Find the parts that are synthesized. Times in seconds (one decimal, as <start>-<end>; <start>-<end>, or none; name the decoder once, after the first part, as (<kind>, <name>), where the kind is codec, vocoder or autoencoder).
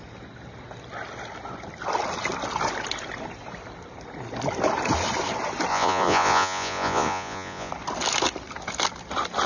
5.7-7.7 (vocoder, Vocos)